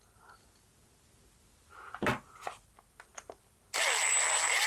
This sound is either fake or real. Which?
real